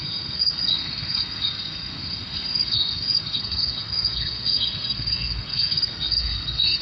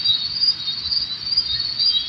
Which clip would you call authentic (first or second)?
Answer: second